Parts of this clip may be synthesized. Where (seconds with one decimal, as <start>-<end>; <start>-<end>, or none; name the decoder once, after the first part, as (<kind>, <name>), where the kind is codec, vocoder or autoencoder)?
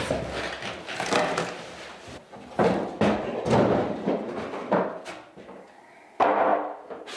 none